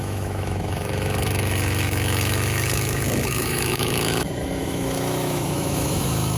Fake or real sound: fake